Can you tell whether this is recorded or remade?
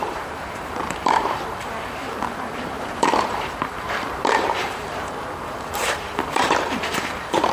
remade